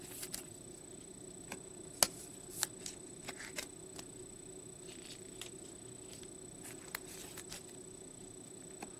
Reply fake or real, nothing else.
real